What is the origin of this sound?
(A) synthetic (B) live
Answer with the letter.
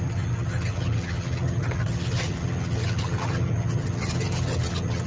A